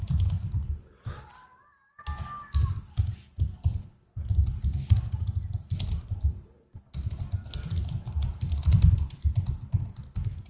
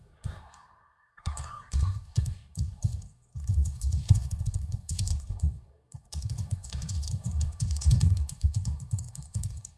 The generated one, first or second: second